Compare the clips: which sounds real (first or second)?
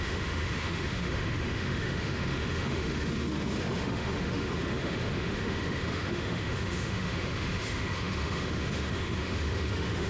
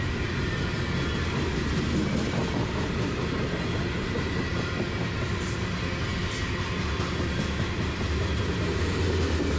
second